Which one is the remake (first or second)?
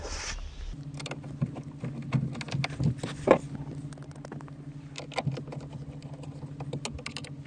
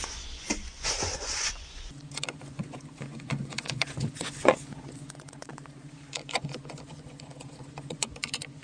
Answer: second